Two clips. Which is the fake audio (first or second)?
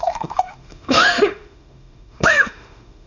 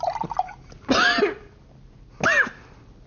first